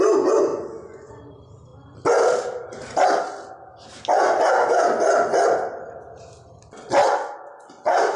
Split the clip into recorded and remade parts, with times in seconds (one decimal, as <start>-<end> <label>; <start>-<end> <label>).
0.0-0.5 recorded; 0.5-1.1 remade; 1.1-8.2 recorded